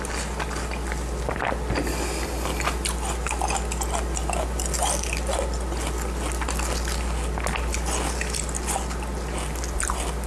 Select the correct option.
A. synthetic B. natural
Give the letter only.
B